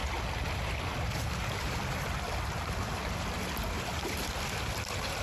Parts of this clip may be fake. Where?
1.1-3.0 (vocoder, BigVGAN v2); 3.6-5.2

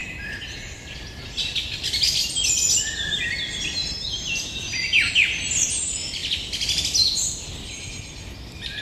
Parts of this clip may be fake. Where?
none

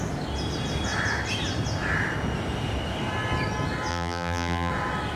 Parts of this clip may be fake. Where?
3.9-4.7 (vocoder, BigVGAN v2)